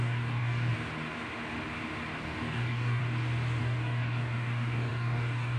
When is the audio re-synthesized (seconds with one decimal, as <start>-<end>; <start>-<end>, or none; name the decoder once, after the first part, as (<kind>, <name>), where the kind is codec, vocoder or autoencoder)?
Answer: 0.0-0.7 (codec, DAC); 2.2-3.0; 3.6-5.6